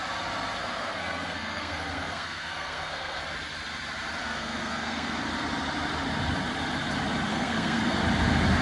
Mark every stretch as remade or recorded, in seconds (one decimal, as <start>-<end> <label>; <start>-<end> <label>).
0.0-0.6 recorded; 0.6-3.2 remade; 3.2-4.2 recorded; 4.2-5.2 remade; 5.2-7.3 recorded; 7.3-8.0 remade; 8.0-8.6 recorded